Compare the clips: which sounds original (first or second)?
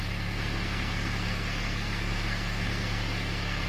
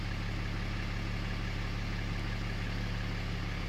second